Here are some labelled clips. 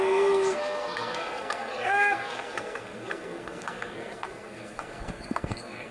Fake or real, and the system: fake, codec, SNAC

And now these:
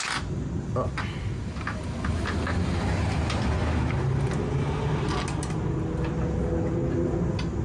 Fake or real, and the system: real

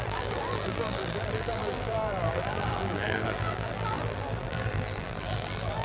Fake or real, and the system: fake, vocoder, BigVGAN v2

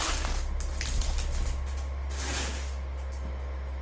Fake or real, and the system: real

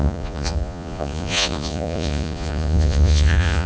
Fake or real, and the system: fake, vocoder, Vocos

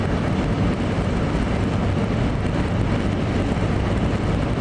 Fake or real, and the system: fake, vocoder, BigVGAN v2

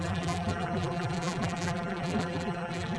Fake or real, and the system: fake, vocoder, BigVGAN v2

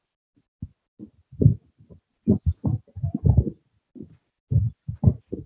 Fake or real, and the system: real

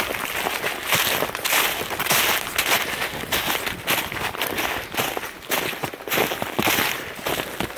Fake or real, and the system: real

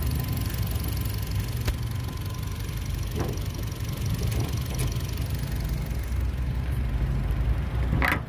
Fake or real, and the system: real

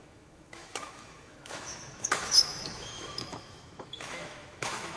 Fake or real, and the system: fake, autoencoder, DAC-VAE